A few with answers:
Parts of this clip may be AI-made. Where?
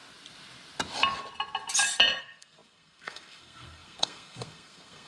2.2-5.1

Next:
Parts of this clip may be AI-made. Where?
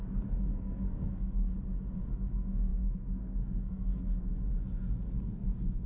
0.0-1.5; 2.1-4.5; 5.2-5.9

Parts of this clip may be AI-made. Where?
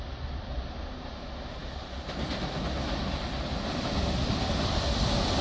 none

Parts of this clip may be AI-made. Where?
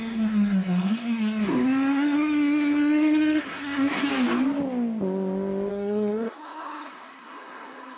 0.0-4.1; 5.7-8.0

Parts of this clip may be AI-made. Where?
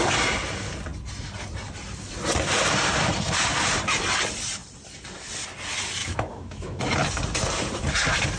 6.0-6.8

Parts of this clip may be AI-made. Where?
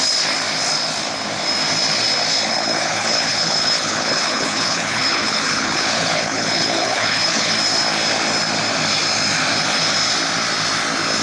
2.5-7.5